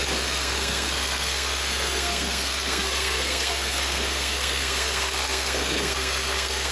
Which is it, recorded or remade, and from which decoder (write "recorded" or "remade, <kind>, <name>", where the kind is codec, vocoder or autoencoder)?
remade, codec, SNAC